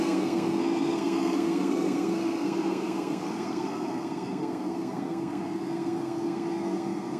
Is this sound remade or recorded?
remade